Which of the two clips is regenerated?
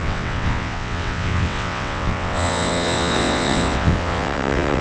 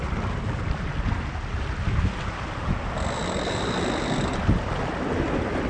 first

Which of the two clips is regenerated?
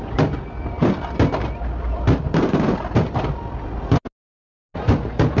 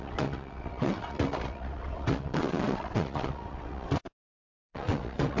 second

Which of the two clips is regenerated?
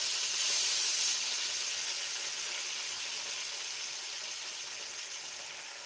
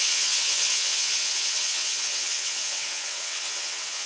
second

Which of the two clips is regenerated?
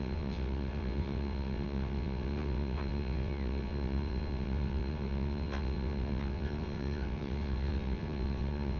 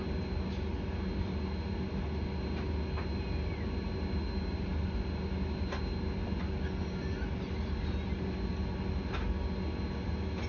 first